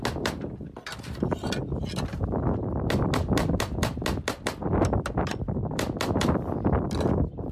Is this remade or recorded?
recorded